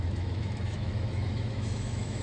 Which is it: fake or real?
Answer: fake